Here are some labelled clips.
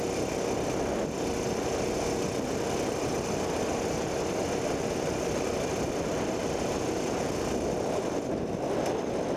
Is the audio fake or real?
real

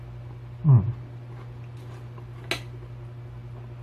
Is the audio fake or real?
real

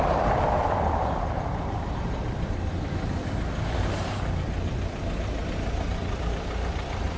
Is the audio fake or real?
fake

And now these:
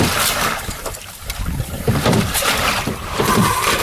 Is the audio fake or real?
fake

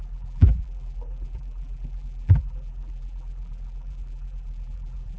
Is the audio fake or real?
fake